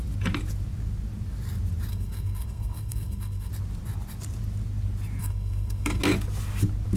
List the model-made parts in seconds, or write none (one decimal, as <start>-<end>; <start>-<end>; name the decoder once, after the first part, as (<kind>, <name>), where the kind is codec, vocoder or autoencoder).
1.9-3.5 (codec, SNAC); 5.2-6.0